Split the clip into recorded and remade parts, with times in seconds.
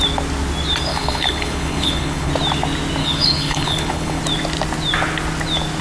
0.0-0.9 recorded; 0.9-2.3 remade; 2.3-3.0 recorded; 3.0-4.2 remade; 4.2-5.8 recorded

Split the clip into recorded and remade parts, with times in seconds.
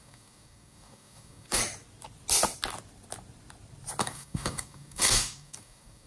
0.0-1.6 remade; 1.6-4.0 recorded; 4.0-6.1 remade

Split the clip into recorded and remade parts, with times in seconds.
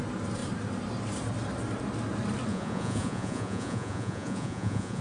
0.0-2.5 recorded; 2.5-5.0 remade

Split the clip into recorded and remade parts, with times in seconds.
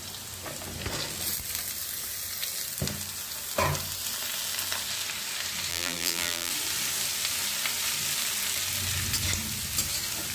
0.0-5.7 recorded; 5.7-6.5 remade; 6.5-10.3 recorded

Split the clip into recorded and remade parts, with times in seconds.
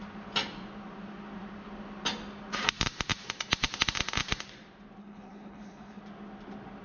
0.0-5.0 recorded; 5.0-6.0 remade; 6.0-6.8 recorded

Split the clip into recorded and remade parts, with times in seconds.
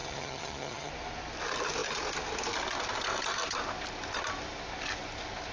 0.0-0.9 remade; 0.9-5.5 recorded